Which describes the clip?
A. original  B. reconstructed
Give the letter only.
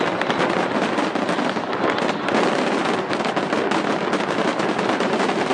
A